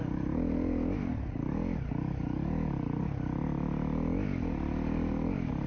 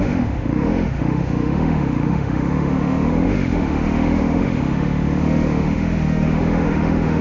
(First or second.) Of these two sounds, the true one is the first